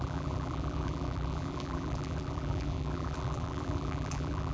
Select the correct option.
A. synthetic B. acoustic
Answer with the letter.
A